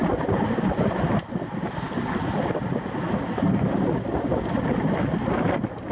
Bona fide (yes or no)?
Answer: yes